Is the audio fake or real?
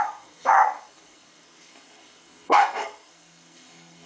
fake